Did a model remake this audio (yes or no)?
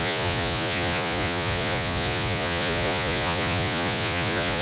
yes